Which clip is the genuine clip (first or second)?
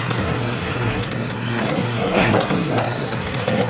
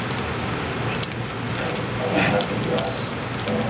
second